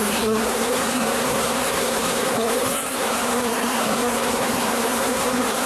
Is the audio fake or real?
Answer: fake